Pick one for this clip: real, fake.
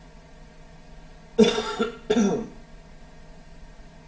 real